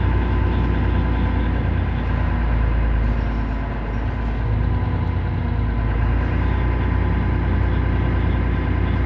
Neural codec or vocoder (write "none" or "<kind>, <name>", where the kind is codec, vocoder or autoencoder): none